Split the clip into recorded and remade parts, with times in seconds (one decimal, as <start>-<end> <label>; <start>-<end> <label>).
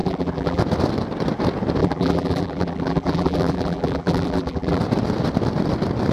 0.0-0.6 remade; 0.6-1.8 recorded; 1.8-4.8 remade; 4.8-6.1 recorded